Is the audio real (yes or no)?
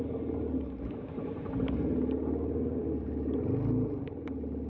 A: yes